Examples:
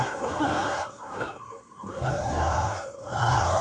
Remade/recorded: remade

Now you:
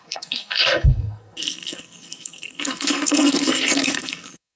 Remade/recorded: remade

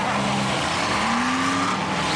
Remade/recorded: recorded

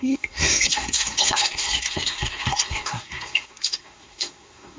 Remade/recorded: remade